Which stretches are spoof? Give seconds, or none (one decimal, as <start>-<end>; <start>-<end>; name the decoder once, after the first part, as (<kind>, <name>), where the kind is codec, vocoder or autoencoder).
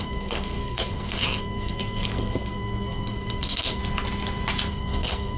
0.0-3.8 (codec, SNAC); 4.7-5.4